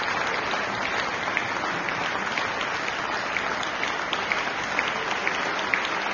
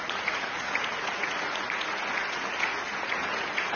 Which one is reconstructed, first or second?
second